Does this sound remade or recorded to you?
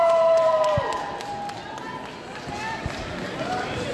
recorded